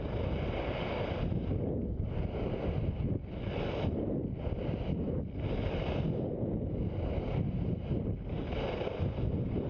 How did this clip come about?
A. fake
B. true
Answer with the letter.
B